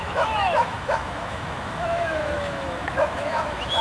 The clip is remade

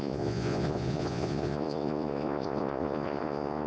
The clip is remade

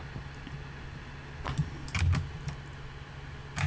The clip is recorded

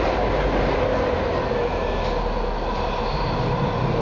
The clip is recorded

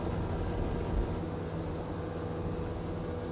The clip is recorded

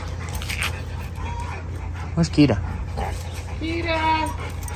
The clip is recorded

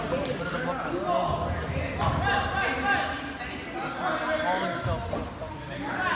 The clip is recorded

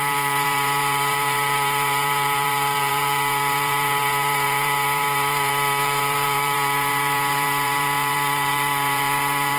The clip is remade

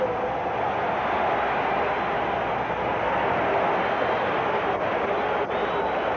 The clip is recorded